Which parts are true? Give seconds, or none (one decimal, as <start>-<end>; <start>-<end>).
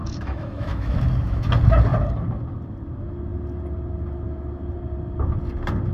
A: 1.5-5.9